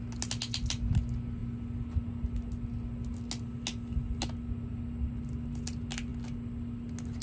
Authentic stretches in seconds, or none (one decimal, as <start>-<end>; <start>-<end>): 0.0-7.2